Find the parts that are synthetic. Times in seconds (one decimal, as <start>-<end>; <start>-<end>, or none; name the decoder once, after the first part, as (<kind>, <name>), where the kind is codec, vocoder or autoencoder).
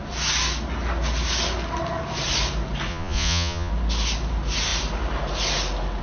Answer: 2.9-3.7 (vocoder, Vocos)